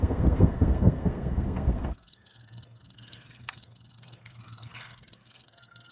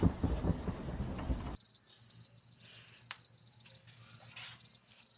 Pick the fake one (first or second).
first